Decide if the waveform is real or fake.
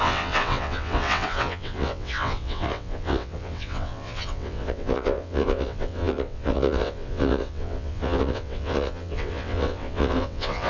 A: fake